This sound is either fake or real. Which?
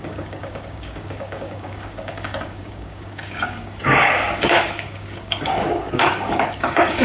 fake